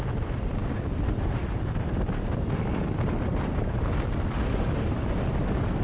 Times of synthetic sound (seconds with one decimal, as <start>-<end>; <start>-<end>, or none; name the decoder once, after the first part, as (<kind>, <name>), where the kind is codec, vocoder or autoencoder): none